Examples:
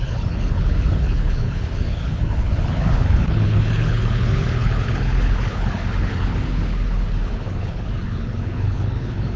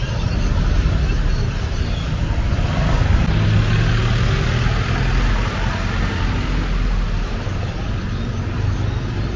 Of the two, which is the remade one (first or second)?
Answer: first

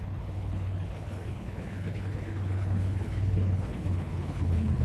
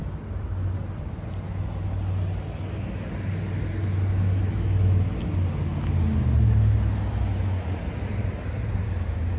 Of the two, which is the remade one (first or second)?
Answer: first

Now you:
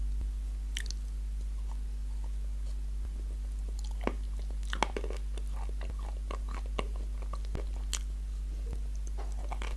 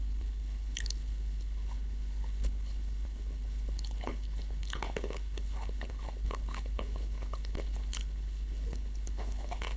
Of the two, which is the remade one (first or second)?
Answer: second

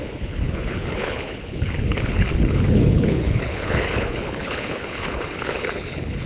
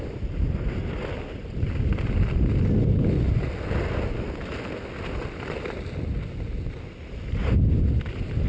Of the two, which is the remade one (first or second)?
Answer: first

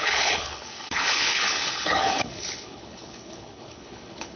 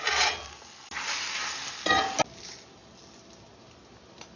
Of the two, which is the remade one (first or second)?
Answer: first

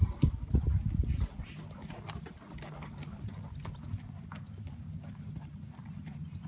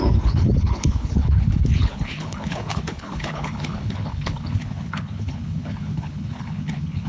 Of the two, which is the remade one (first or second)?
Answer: second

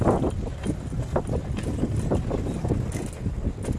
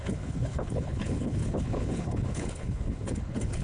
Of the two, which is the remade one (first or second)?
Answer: second